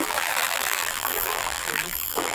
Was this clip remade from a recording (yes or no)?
yes